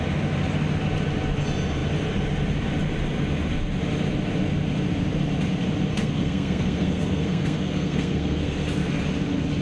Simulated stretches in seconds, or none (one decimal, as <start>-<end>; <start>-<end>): 5.9-8.9